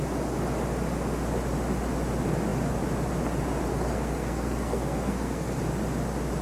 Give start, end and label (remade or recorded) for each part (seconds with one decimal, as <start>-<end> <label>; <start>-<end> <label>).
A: 0.0-3.7 recorded; 3.7-5.6 remade; 5.6-6.4 recorded

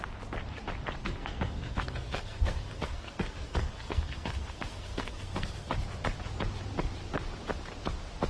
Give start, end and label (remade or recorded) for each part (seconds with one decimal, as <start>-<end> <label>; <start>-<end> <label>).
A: 0.0-1.0 recorded; 1.0-5.7 remade; 5.7-8.3 recorded